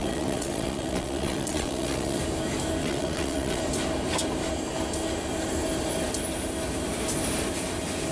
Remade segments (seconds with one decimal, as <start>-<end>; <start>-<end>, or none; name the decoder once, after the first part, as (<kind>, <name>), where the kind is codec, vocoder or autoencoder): 0.0-2.2 (vocoder, WaveNeXt); 2.8-3.6

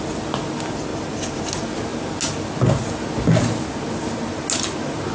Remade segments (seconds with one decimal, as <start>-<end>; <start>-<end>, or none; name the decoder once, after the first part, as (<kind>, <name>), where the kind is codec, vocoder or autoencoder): 0.9-1.4 (vocoder, BigVGAN v2)

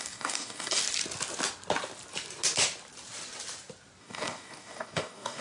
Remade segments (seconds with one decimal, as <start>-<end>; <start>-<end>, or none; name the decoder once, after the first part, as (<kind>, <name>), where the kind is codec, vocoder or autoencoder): 0.0-0.8 (codec, DAC); 4.0-5.4

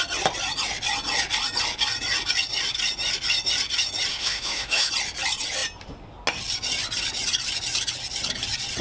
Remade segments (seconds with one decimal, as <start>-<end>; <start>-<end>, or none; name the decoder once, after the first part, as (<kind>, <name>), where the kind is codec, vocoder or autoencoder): 4.1-4.9 (autoencoder, DAC-VAE)

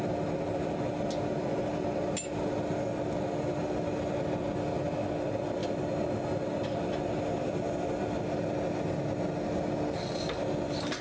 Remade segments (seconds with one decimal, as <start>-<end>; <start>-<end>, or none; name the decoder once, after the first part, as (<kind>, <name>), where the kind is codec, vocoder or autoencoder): none

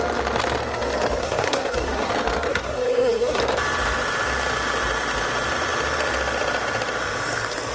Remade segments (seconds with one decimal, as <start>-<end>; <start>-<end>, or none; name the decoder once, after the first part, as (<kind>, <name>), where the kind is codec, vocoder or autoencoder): 1.2-2.1 (codec, SNAC); 2.5-3.4